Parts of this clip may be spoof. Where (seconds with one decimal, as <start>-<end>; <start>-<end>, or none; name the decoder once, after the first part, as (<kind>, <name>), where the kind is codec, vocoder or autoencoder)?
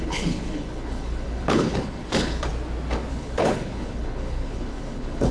0.0-2.5 (codec, HILCodec); 3.1-5.3